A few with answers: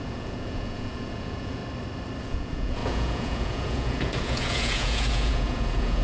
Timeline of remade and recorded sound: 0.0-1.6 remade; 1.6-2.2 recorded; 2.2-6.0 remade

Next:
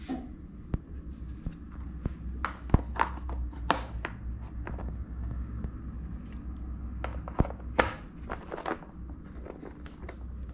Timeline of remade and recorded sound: 0.0-4.8 recorded; 4.8-5.7 remade; 5.7-10.5 recorded

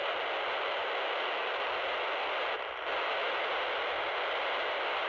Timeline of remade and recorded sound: 0.0-5.1 recorded

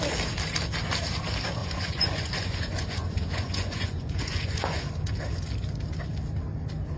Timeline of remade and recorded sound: 0.0-1.6 recorded; 1.6-4.9 remade; 4.9-7.0 recorded

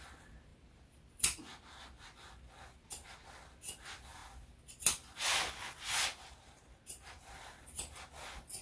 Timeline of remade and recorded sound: 0.0-6.1 recorded; 6.1-7.3 remade; 7.3-8.6 recorded

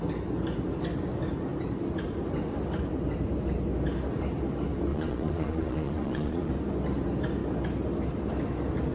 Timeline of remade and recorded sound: 0.0-4.9 recorded; 4.9-6.5 remade; 6.5-8.9 recorded